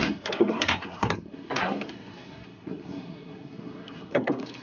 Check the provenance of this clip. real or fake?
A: fake